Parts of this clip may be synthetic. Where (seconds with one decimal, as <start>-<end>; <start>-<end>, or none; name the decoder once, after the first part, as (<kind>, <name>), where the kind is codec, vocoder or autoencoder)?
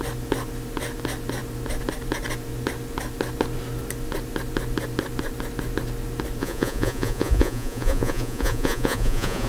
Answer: 6.4-9.5 (vocoder, Vocos)